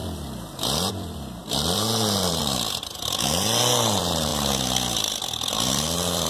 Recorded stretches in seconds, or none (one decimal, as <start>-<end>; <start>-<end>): 0.0-0.9; 4.3-5.5